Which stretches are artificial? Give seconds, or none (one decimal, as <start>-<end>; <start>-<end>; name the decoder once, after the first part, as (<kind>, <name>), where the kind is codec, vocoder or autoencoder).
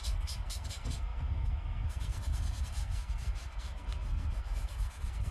0.0-5.3 (codec, SNAC)